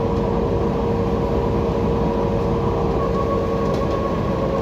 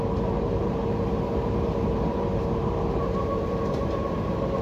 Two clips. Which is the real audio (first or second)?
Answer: first